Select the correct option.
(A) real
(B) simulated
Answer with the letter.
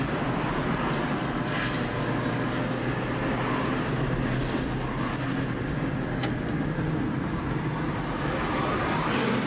A